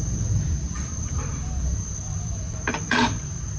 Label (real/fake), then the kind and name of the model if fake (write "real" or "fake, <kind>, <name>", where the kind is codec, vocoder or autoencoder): fake, vocoder, BigVGAN v2